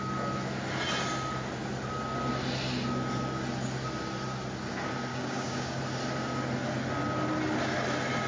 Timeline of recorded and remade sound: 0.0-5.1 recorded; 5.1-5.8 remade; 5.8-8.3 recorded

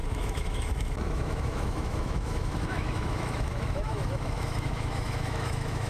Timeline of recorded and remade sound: 0.0-5.9 remade

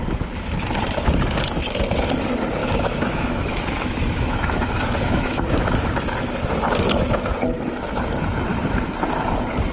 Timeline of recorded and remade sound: 0.0-2.6 recorded; 2.6-5.9 remade; 5.9-9.7 recorded

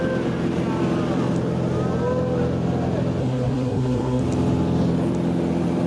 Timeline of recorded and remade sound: 0.0-3.2 recorded; 3.2-4.2 remade; 4.2-5.9 recorded

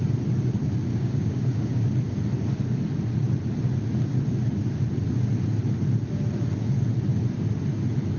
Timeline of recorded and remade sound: 0.0-0.9 recorded; 0.9-1.9 remade; 1.9-8.2 recorded

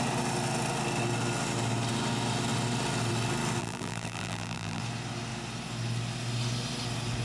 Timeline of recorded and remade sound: 0.0-3.6 recorded; 3.6-4.8 remade; 4.8-7.2 recorded

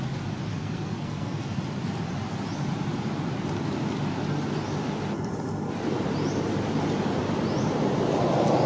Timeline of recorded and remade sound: 0.0-0.5 recorded; 0.5-1.6 remade; 1.6-8.7 recorded

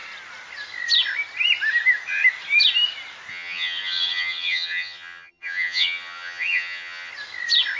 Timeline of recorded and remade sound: 0.0-3.3 recorded; 3.3-7.1 remade; 7.1-7.8 recorded